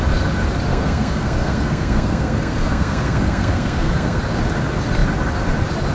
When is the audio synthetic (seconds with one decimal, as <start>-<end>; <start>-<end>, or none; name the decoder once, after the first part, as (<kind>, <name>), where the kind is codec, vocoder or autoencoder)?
0.7-4.2 (codec, SNAC)